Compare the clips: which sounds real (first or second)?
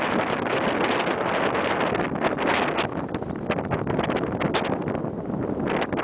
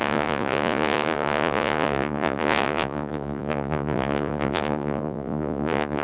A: first